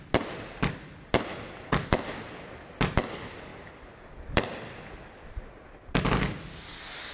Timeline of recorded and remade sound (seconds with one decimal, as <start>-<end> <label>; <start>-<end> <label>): 0.0-7.1 recorded